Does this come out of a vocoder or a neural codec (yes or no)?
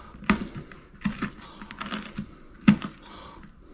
no